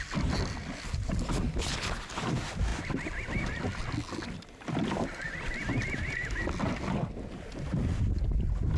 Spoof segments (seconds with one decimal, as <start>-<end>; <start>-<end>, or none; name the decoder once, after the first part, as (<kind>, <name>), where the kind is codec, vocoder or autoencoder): none